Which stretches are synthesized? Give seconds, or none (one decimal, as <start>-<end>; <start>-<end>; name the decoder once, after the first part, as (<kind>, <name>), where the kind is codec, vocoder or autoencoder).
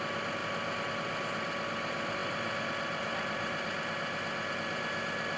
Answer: none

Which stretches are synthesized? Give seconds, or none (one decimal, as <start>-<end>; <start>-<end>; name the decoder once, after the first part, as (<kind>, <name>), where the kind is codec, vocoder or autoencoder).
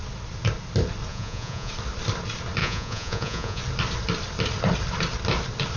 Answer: 1.1-1.7 (vocoder, Vocos); 2.6-3.6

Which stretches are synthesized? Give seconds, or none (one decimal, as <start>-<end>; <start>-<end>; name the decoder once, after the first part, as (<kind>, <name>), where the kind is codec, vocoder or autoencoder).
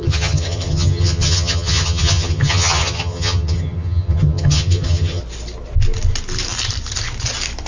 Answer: 0.0-5.2 (vocoder, HiFi-GAN)